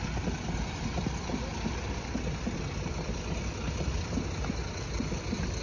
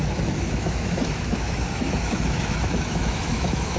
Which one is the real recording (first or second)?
first